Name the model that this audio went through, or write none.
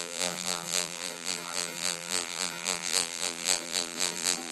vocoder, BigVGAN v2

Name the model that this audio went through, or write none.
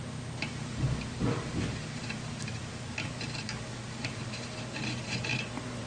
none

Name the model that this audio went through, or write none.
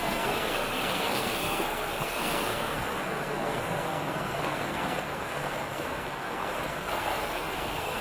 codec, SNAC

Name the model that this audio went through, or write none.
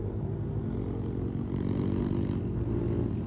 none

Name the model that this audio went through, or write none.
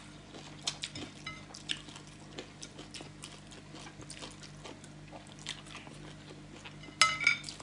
none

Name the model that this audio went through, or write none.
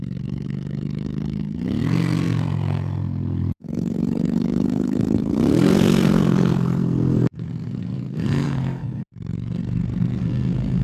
codec, SNAC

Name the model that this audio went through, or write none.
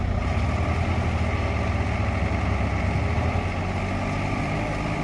none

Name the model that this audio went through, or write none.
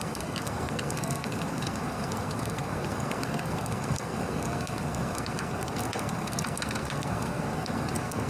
codec, SNAC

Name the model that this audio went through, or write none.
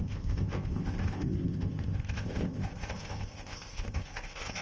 codec, ZipCodec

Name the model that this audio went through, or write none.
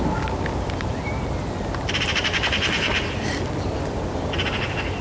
none